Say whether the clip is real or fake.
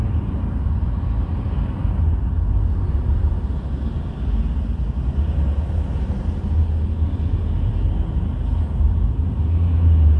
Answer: real